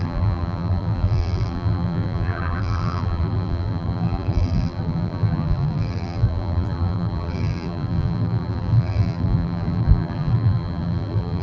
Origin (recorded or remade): remade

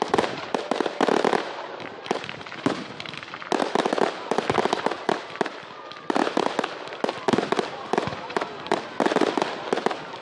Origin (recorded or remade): recorded